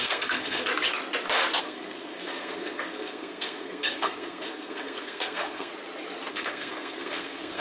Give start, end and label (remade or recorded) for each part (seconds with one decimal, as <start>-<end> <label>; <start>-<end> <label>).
0.0-0.7 remade; 0.7-1.6 recorded; 1.6-5.7 remade; 5.7-6.3 recorded; 6.3-7.6 remade